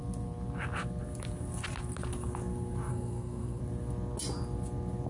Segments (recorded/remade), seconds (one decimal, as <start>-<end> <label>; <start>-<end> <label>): 0.0-2.9 recorded; 2.9-3.6 remade; 3.6-5.1 recorded